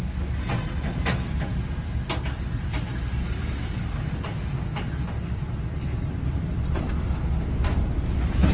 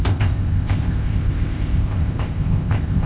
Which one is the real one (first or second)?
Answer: first